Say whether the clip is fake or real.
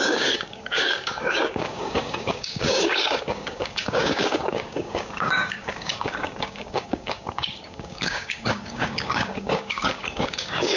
fake